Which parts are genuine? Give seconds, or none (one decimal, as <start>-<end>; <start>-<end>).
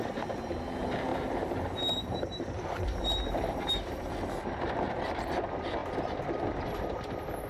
0.0-1.1; 4.1-7.5